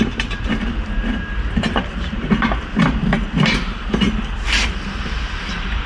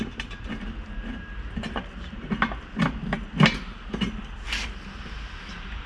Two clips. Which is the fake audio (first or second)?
first